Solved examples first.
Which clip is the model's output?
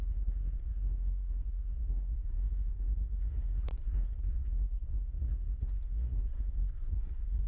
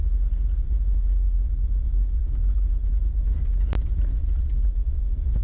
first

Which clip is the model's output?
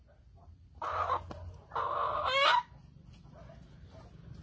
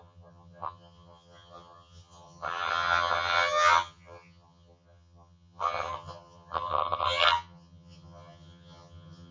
second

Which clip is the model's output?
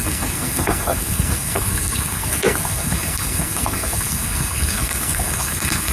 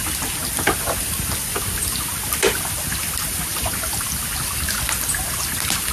first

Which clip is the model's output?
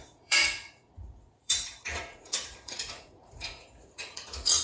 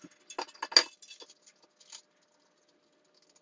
first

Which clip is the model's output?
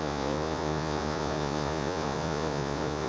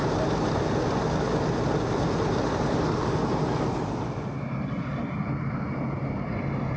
first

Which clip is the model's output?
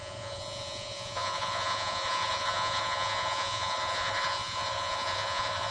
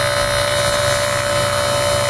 first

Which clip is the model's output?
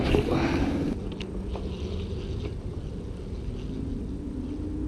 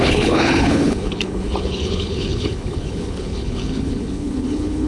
second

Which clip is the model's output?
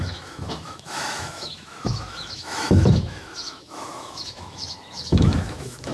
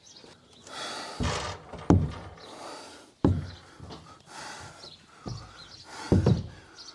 first